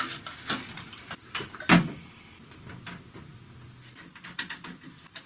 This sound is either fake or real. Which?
real